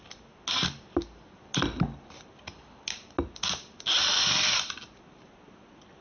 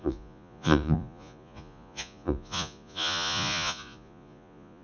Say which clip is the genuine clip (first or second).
first